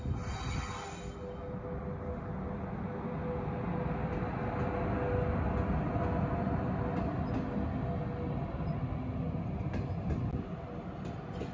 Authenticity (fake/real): real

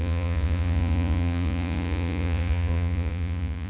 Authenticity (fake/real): fake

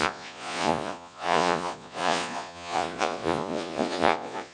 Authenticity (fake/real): fake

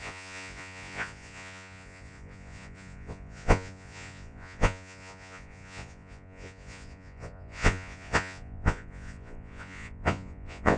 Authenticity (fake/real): fake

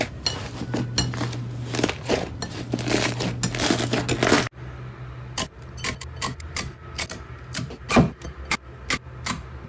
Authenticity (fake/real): real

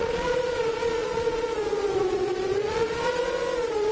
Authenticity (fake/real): fake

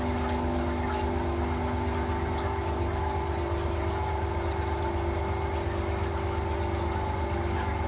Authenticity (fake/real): real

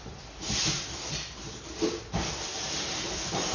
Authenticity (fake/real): real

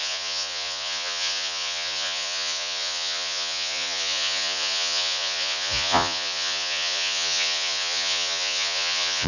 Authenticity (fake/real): fake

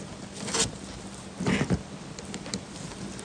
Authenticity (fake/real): real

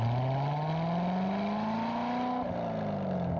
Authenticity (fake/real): real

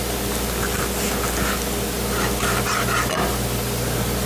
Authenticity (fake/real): real